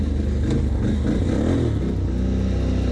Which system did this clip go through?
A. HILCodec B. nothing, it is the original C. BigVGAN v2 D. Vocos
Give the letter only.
B